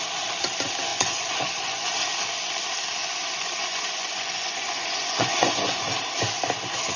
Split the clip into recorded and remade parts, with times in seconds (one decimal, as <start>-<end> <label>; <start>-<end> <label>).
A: 0.0-0.9 recorded; 0.9-1.9 remade; 1.9-3.0 recorded; 3.0-5.9 remade; 5.9-7.0 recorded